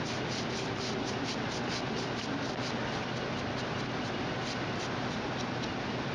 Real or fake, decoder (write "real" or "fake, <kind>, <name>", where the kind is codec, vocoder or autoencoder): real